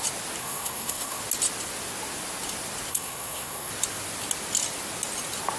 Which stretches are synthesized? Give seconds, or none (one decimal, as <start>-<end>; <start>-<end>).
0.4-1.2; 2.9-3.7